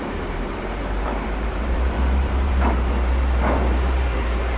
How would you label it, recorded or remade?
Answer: remade